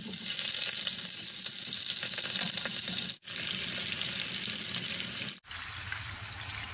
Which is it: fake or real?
real